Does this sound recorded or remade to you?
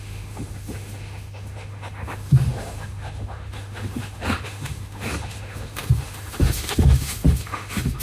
remade